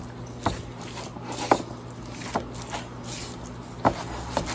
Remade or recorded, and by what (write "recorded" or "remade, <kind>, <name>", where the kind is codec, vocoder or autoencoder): recorded